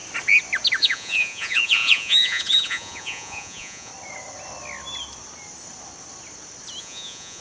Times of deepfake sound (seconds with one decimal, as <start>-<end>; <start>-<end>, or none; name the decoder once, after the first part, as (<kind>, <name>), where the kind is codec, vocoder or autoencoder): 0.8-3.9 (vocoder, Vocos); 6.8-7.4